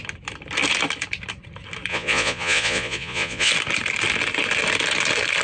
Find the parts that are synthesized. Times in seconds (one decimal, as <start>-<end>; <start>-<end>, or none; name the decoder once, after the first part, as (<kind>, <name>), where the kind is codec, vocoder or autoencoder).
1.9-3.5 (vocoder, Vocos)